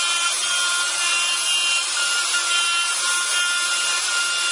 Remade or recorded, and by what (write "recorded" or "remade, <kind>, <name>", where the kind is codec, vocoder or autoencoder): recorded